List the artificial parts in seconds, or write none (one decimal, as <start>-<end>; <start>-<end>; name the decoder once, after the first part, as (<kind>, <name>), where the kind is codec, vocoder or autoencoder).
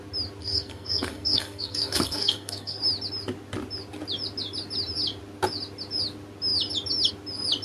0.4-2.8 (codec, SNAC)